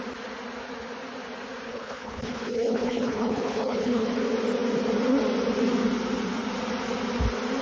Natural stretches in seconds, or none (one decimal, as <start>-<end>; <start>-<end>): 0.0-1.7; 4.1-7.6